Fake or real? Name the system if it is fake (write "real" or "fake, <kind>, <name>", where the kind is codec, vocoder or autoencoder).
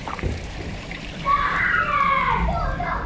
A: fake, vocoder, BigVGAN v2